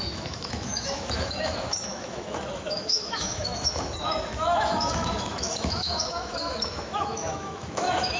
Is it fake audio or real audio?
fake